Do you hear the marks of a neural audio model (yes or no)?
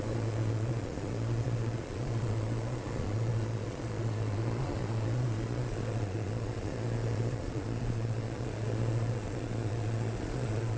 yes